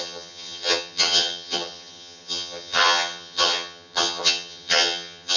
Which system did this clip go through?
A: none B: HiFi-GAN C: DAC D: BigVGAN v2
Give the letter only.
B